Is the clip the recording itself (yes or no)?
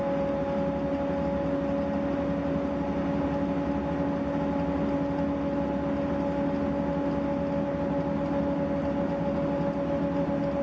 yes